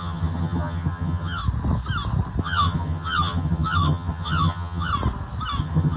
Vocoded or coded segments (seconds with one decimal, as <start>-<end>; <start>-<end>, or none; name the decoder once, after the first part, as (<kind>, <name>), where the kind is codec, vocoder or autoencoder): 0.0-1.4 (vocoder, HiFi-GAN); 2.4-4.9; 5.6-6.0